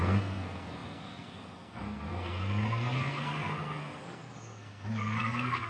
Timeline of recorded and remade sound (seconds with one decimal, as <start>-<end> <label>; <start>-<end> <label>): 0.0-5.7 remade